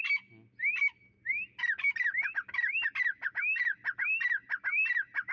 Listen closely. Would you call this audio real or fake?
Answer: real